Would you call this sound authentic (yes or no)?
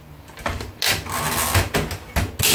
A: yes